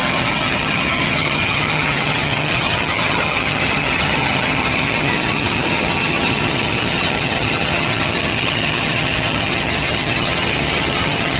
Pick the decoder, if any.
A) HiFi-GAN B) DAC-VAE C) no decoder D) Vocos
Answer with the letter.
A